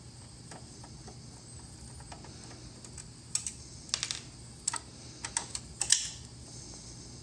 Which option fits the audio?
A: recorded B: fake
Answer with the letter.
A